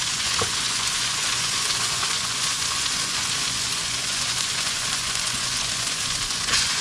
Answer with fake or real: fake